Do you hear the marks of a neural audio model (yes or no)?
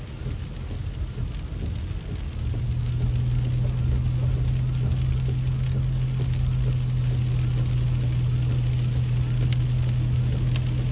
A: no